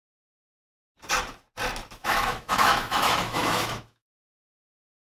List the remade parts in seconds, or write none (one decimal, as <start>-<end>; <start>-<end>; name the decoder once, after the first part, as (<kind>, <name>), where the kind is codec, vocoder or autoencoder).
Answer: 2.0-5.2 (autoencoder, DAC-VAE)

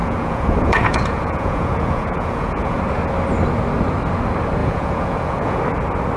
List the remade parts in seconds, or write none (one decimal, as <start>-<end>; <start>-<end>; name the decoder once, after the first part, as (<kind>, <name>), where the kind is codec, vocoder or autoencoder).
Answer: 0.0-2.8 (vocoder, Vocos); 4.6-5.6

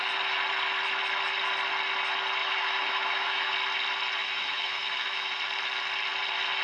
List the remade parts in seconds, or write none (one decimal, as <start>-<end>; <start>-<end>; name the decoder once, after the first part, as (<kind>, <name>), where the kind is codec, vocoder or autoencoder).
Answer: 2.4-3.5 (autoencoder, DAC-VAE); 4.2-5.3

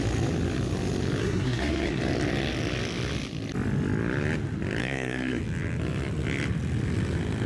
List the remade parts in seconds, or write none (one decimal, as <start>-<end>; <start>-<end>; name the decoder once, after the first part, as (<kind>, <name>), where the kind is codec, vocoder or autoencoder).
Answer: 1.2-2.0 (codec, SNAC); 4.8-5.4

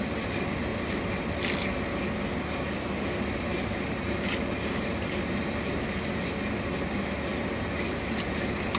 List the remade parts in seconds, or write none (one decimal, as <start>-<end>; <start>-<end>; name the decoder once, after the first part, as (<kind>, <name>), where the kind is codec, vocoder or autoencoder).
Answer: none

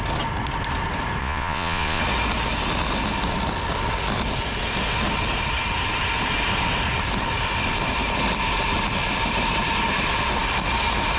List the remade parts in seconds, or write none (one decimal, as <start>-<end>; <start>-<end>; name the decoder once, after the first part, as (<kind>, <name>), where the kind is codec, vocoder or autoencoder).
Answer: 1.2-2.0 (vocoder, Vocos)

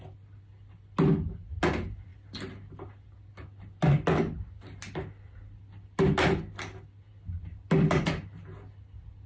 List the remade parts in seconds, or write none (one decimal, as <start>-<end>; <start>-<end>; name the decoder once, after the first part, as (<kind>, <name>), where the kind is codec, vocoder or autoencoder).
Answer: none

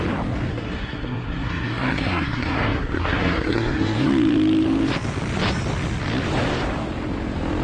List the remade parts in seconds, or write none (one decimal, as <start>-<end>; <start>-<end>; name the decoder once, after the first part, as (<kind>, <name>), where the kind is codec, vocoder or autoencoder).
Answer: 0.5-4.1 (codec, SNAC)